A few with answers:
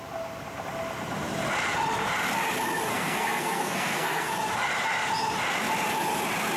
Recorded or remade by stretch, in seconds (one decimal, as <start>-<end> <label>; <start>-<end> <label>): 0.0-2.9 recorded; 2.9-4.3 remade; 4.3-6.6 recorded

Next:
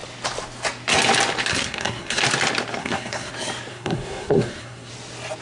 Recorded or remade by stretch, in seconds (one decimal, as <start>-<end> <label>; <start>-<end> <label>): 0.0-1.5 recorded; 1.5-2.2 remade; 2.2-2.8 recorded; 2.8-3.3 remade; 3.3-3.7 recorded; 3.7-4.9 remade; 4.9-5.4 recorded

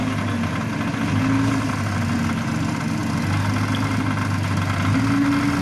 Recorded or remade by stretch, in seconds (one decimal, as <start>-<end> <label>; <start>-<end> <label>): 0.0-5.6 recorded